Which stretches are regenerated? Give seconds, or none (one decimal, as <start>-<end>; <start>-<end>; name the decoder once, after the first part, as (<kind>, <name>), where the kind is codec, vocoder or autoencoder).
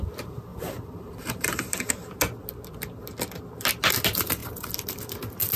0.5-1.9 (vocoder, BigVGAN v2); 4.4-4.9